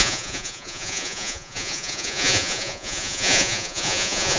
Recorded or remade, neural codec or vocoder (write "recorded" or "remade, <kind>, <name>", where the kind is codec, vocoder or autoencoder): remade, vocoder, Vocos